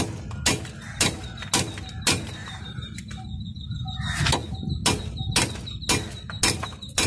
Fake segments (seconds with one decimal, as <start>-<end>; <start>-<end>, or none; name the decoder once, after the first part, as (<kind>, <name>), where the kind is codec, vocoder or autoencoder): 2.4-3.0 (vocoder, BigVGAN v2)